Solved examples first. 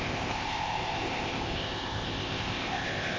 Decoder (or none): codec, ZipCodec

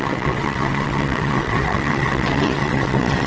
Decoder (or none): vocoder, WaveNeXt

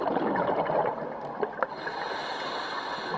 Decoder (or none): none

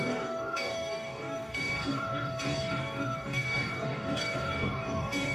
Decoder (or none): codec, DAC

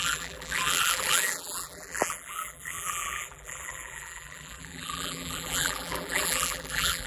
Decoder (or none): vocoder, BigVGAN v2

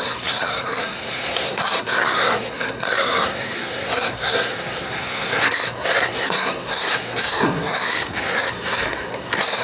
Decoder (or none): codec, SNAC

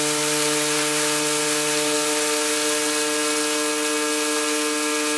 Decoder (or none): none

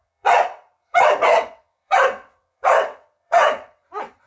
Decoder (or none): vocoder, WaveNeXt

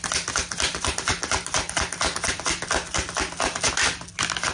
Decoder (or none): none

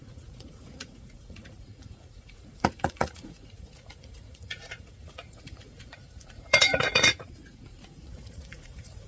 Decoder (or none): vocoder, Vocos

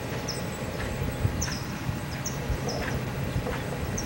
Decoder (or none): vocoder, BigVGAN v2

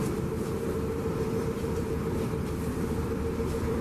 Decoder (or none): vocoder, BigVGAN v2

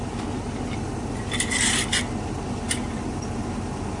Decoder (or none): none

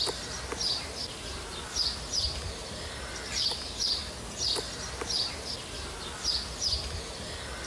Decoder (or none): none